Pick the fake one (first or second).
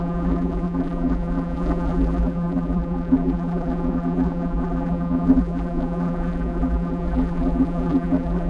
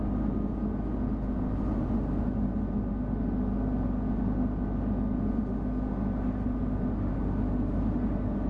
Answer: first